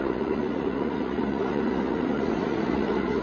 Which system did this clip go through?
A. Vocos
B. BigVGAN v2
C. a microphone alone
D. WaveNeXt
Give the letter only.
A